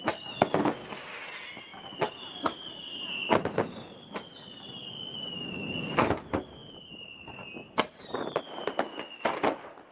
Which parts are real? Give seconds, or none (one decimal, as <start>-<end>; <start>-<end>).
0.0-9.9